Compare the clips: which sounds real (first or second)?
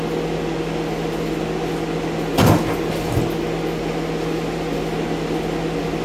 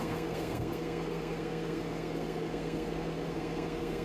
first